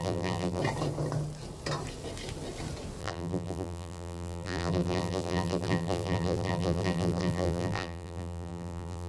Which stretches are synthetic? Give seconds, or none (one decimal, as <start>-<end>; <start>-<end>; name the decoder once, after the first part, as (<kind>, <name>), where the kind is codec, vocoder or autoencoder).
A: 0.0-0.6 (vocoder, BigVGAN v2); 3.0-9.1